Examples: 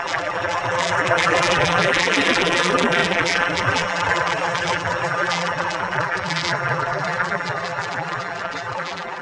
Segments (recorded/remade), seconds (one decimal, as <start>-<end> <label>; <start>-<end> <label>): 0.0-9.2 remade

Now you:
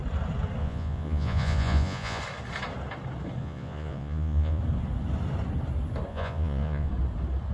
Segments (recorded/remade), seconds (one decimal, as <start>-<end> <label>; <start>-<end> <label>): 0.0-0.6 recorded; 0.6-2.2 remade; 2.2-3.4 recorded; 3.4-4.6 remade; 4.6-6.1 recorded; 6.1-6.9 remade; 6.9-7.5 recorded

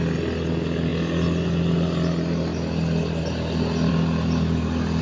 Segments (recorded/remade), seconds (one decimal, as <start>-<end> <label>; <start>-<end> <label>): 0.0-5.0 recorded